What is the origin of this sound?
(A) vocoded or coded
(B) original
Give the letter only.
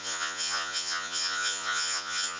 A